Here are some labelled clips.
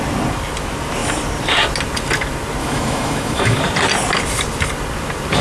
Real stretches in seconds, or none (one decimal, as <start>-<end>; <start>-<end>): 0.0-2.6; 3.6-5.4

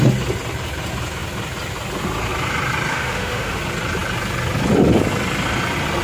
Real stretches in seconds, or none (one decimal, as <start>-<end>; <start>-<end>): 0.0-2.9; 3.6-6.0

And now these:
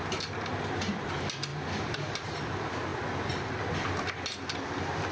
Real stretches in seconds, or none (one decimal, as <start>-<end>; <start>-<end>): 0.0-5.1

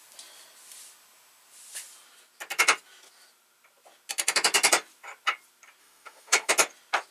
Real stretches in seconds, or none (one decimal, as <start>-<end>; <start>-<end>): 0.0-5.8; 6.5-7.1

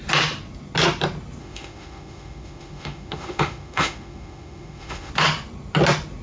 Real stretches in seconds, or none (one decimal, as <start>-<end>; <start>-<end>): 0.0-1.4; 5.1-6.2